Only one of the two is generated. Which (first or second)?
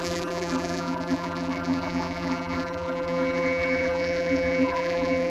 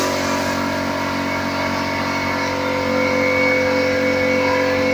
first